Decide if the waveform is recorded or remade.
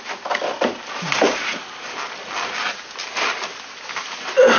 recorded